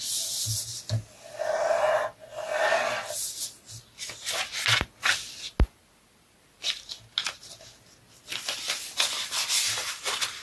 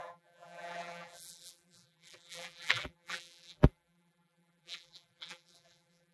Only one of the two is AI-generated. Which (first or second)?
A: second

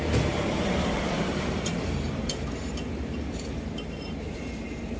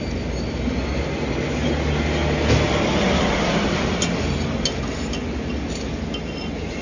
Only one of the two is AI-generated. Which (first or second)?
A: first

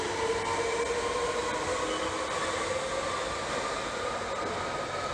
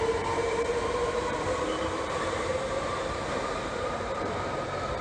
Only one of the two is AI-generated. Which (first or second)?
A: second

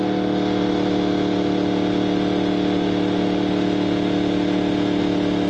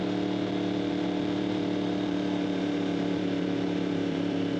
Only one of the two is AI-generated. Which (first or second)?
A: second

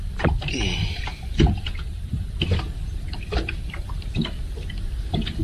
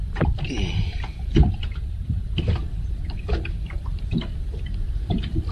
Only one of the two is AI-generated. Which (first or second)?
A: second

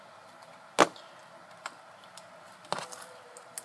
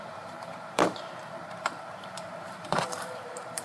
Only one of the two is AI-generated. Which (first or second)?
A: second